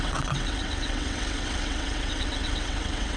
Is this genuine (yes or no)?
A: no